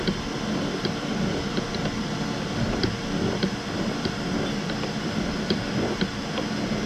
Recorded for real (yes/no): no